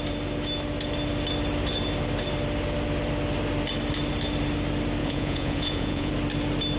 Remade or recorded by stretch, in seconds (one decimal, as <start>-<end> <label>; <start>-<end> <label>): 0.0-5.0 recorded; 5.0-6.1 remade; 6.1-6.8 recorded